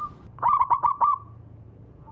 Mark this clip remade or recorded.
remade